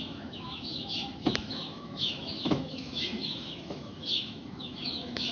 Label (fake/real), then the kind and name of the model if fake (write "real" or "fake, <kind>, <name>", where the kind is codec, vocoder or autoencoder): fake, autoencoder, DAC-VAE